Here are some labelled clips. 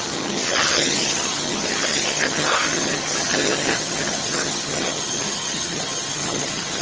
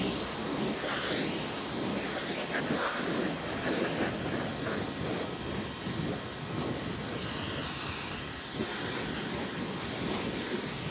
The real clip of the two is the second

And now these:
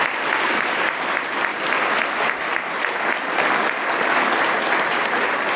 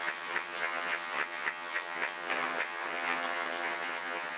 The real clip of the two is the first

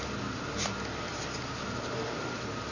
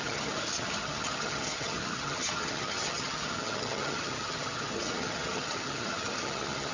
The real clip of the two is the first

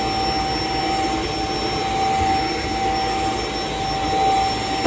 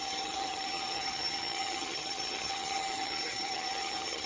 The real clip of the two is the first